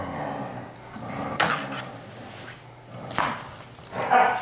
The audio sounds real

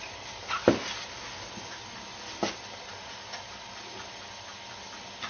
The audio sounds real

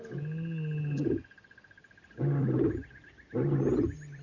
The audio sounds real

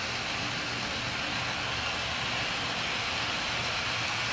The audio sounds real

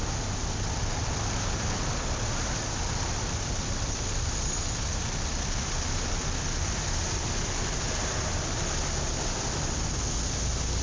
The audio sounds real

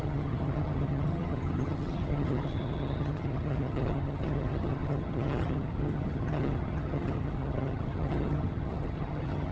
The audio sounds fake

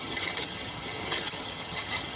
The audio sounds fake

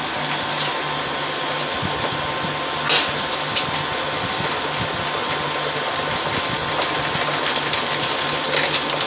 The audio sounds real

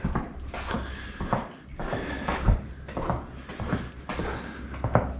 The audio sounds real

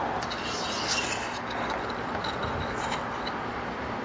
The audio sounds real